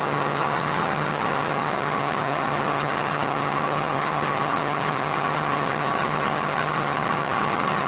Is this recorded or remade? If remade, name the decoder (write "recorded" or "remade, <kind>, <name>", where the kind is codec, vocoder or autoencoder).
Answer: remade, vocoder, HiFi-GAN